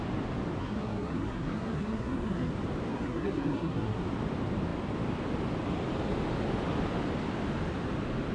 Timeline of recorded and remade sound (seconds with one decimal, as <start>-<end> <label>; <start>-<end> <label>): 0.0-0.6 recorded; 0.6-2.5 remade; 2.5-2.9 recorded; 2.9-4.0 remade; 4.0-8.3 recorded